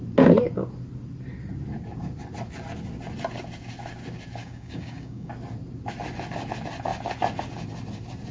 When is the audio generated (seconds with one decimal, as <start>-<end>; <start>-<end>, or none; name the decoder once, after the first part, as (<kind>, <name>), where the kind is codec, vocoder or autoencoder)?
4.4-5.3 (codec, DAC)